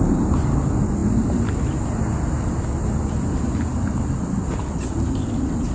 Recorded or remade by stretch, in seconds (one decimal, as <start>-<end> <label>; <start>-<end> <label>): 0.0-5.7 recorded